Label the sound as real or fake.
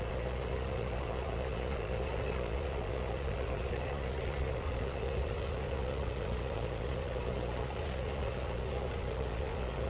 fake